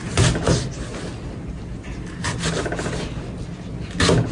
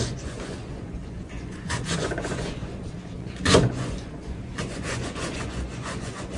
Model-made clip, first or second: second